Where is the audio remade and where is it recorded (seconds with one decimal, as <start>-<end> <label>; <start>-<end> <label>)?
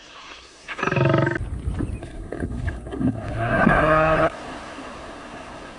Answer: 0.0-0.8 remade; 0.8-2.0 recorded; 2.0-5.8 remade